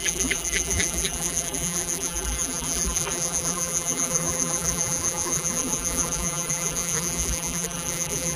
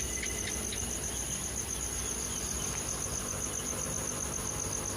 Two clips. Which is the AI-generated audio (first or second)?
first